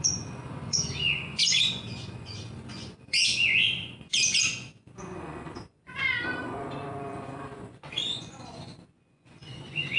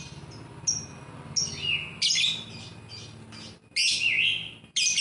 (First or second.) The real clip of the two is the second